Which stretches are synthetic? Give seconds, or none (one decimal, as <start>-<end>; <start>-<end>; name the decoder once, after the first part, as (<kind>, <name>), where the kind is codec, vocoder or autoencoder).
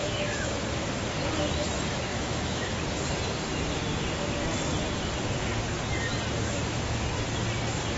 0.0-0.6 (autoencoder, DAC-VAE); 2.1-2.7